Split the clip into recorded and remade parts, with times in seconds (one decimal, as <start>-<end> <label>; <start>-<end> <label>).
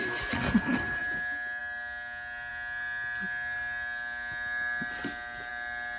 0.0-6.0 recorded